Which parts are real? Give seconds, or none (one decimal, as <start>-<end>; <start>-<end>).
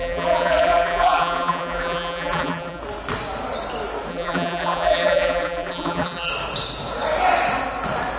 2.8-4.1; 6.3-8.2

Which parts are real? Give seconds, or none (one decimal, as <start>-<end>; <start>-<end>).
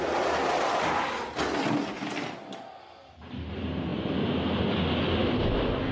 0.0-5.9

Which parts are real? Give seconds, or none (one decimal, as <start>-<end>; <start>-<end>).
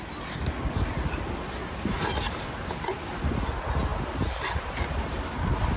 0.0-0.4; 0.9-5.8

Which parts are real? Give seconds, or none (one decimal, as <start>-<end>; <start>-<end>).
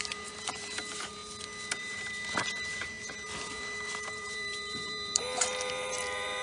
1.2-1.8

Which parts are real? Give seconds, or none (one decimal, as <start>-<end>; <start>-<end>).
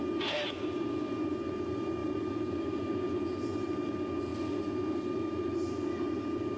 0.0-2.0; 2.8-6.6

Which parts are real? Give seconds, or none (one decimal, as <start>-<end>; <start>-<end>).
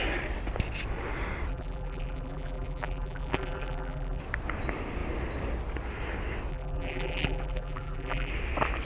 0.0-1.5; 4.2-6.5; 8.3-8.8